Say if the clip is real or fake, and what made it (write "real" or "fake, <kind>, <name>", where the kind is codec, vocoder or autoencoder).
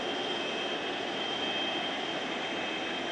real